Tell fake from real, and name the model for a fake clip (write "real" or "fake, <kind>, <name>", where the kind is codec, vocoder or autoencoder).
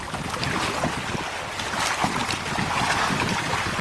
real